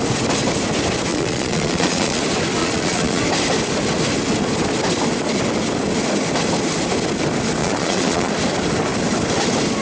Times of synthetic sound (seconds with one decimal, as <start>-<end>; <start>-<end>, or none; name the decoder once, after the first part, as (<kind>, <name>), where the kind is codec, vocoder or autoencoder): 1.1-2.2 (vocoder, Vocos); 2.6-3.2; 7.6-8.3